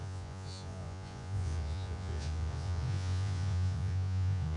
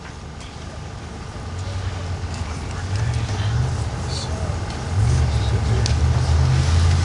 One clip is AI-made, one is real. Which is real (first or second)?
second